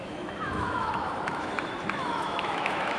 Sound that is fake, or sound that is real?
fake